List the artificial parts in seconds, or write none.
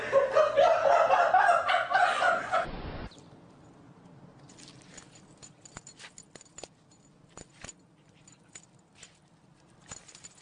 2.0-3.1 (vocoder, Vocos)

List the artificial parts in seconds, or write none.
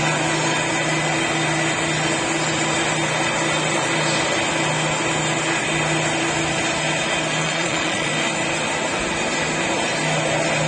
7.4-8.1 (vocoder, Vocos)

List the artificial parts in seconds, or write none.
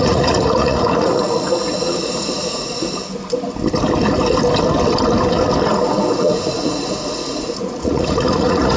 0.0-3.0 (vocoder, Vocos); 6.2-8.8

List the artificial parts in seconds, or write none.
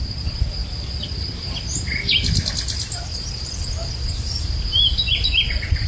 none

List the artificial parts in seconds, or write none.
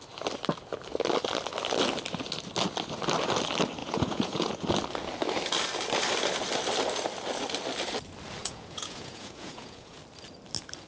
3.8-4.5 (vocoder, Vocos); 8.4-10.0